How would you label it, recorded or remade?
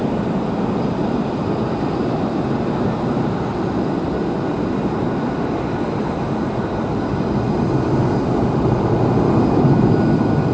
recorded